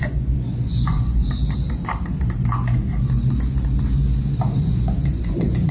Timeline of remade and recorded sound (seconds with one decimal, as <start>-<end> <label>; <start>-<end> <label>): 0.0-1.2 remade; 1.2-4.6 recorded; 4.6-5.7 remade